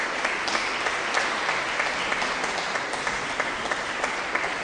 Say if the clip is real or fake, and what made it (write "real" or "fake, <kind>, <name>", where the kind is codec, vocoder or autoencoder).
real